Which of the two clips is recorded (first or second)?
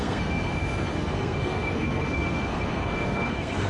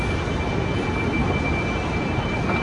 second